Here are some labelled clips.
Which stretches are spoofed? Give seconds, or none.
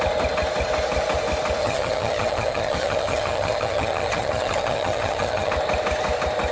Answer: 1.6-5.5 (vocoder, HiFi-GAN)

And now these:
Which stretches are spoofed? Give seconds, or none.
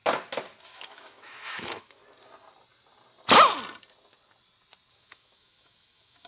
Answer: 0.6-2.0 (autoencoder, DAC-VAE); 4.9-6.3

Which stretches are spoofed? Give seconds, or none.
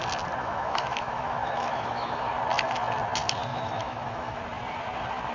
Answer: 0.4-2.3 (autoencoder, DAC-VAE); 3.5-4.4